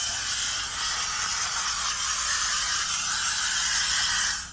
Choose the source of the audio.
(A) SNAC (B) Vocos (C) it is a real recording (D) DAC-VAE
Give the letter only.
C